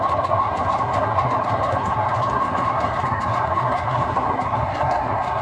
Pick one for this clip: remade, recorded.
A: remade